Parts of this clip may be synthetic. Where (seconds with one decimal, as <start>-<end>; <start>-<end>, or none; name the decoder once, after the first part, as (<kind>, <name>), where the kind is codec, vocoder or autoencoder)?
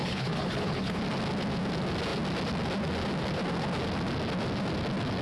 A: 0.0-1.0 (codec, HILCodec)